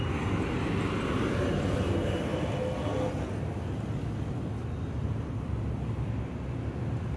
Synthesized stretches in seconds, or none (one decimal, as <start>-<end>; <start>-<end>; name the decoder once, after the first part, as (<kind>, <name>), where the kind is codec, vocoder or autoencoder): none